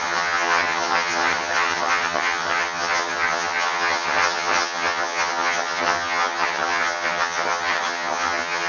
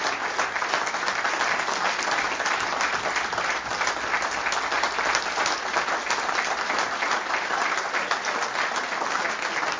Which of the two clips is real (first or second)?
second